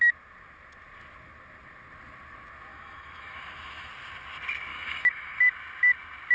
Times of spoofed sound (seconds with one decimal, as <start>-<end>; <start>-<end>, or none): 2.7-3.9; 4.7-5.4